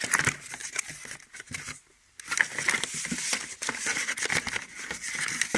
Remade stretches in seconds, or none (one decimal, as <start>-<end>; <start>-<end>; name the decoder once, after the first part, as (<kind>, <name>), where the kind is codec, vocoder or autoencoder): none